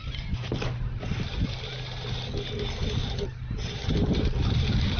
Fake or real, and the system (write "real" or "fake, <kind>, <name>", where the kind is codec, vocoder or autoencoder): real